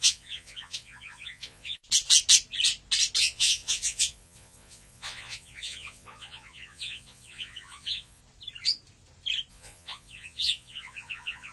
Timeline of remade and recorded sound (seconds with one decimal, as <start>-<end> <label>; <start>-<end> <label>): 0.0-1.8 remade; 1.8-3.2 recorded; 3.2-8.2 remade; 8.2-9.5 recorded; 9.5-11.5 remade